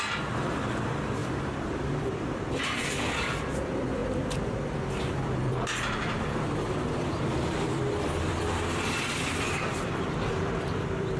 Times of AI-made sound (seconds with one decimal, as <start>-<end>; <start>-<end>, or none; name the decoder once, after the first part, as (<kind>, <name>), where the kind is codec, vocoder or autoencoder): 0.0-11.2 (vocoder, BigVGAN v2)